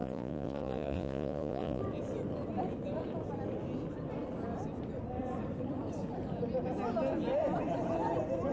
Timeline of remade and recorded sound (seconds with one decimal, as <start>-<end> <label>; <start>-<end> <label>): 0.0-1.8 remade; 1.8-8.5 recorded